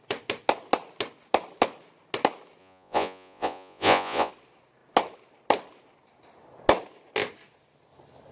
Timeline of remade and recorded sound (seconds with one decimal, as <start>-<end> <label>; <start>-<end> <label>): 0.0-2.6 recorded; 2.6-4.3 remade; 4.3-8.3 recorded